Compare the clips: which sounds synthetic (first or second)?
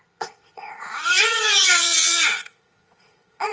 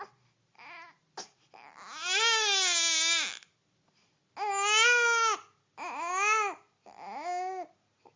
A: first